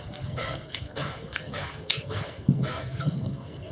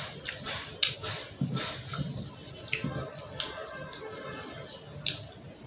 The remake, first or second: first